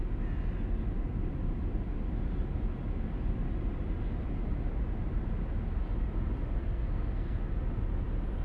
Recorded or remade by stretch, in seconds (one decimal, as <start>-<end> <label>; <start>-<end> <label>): 0.0-6.6 recorded; 6.6-7.5 remade; 7.5-8.4 recorded